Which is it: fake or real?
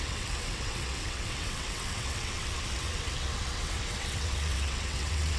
fake